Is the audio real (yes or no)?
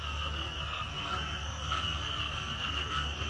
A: no